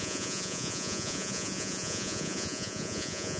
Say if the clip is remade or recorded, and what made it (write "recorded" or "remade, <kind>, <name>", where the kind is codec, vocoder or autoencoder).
remade, vocoder, Vocos